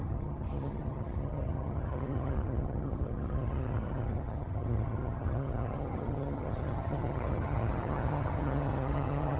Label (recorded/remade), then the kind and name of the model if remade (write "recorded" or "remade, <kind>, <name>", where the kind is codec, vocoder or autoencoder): remade, vocoder, HiFi-GAN